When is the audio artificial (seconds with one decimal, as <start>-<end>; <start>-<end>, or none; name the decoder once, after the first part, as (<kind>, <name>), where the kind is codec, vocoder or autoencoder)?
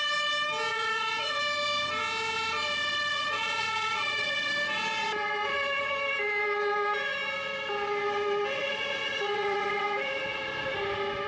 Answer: 0.7-1.4 (vocoder, Vocos); 3.1-4.5; 8.6-9.8